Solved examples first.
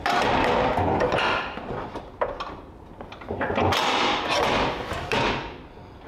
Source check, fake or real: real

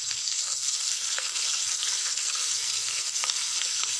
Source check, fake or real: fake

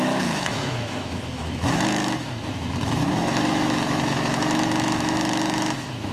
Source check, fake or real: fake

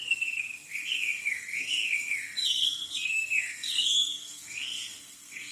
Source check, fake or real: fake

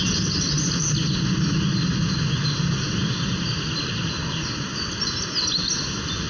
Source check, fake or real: real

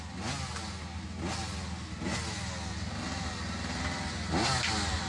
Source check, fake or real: real